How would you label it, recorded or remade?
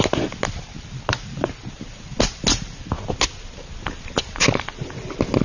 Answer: recorded